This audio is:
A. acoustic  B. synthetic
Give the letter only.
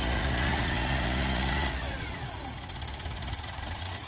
B